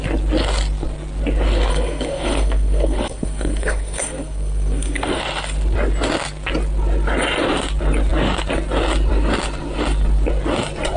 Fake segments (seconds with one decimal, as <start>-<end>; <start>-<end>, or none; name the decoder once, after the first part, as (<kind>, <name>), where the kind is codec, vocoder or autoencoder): 1.7-5.2 (codec, SNAC)